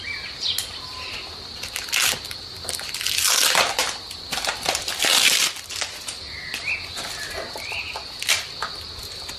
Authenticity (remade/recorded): recorded